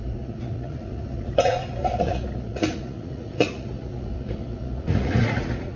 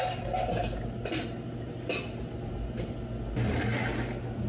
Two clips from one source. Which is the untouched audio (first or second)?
second